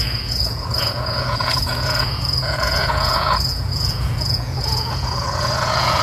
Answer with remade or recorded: remade